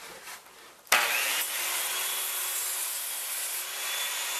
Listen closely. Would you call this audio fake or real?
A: real